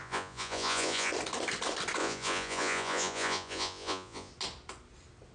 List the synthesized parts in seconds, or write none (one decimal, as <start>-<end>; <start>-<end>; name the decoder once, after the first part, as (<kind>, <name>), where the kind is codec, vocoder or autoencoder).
0.0-1.1 (vocoder, Vocos); 2.0-4.3